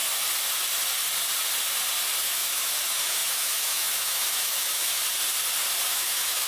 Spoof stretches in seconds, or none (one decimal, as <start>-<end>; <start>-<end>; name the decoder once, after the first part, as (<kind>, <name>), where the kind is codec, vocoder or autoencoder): 2.2-5.0 (autoencoder, DAC-VAE); 5.9-6.5

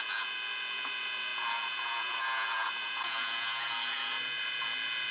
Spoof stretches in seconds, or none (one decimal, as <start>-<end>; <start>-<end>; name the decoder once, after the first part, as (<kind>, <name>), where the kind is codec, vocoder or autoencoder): 0.0-5.1 (vocoder, Vocos)

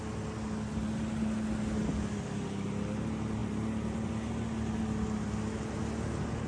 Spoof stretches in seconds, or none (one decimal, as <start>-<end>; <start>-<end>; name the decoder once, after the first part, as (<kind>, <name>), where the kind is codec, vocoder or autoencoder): 3.4-4.1 (vocoder, BigVGAN v2)

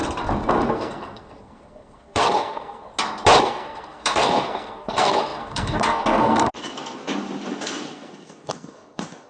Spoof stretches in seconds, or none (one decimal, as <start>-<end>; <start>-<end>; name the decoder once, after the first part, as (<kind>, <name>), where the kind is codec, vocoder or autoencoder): 0.7-2.9 (codec, SNAC); 3.4-7.0; 7.5-9.3

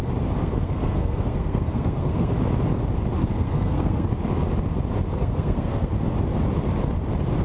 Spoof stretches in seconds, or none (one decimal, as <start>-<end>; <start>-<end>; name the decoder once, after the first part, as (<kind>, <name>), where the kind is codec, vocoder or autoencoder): 0.4-2.3 (codec, SNAC); 3.2-4.1; 5.1-5.9

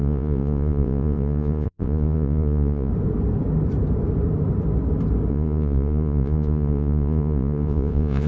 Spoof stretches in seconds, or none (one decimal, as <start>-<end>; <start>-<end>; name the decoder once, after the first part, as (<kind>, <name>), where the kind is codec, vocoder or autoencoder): 0.0-2.9 (vocoder, Vocos); 5.3-8.3